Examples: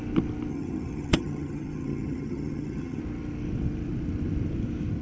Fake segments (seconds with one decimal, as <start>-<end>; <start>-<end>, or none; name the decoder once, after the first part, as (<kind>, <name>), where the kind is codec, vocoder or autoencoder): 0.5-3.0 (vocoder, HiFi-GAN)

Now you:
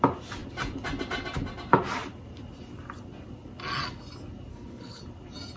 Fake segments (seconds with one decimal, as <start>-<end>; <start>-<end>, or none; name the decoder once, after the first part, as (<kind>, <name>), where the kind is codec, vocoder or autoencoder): 4.5-5.0 (codec, HILCodec)

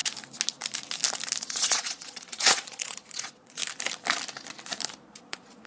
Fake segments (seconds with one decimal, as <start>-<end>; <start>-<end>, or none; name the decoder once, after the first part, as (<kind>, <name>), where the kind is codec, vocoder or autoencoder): 1.4-3.6 (vocoder, Vocos); 5.2-5.7